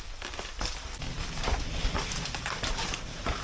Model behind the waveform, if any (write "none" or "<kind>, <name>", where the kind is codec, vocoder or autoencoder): vocoder, BigVGAN v2